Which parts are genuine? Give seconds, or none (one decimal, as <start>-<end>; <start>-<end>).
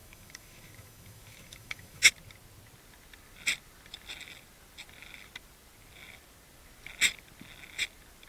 2.1-8.3